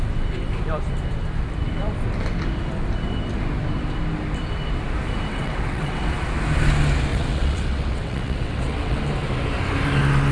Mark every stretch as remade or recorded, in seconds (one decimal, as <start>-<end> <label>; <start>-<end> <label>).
0.0-5.3 recorded; 5.3-6.1 remade; 6.1-7.1 recorded; 7.1-9.0 remade; 9.0-10.3 recorded